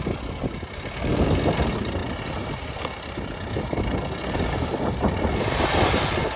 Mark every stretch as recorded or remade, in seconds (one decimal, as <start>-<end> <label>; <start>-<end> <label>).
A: 0.0-6.4 recorded